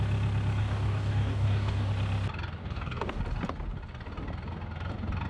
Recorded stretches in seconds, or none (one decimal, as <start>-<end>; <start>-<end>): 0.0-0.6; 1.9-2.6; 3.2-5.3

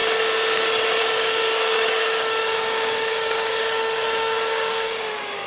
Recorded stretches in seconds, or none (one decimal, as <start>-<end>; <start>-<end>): 0.0-1.0

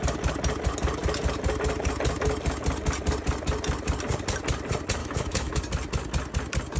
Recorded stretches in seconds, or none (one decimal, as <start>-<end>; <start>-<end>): 0.0-5.0; 5.6-6.8

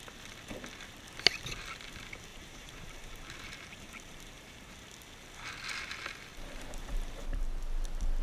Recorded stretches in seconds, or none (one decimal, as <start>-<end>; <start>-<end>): 0.0-2.3; 4.7-6.3; 7.6-8.2

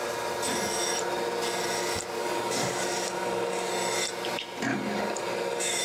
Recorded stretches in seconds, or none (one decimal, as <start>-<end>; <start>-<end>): 0.0-2.2; 3.7-4.7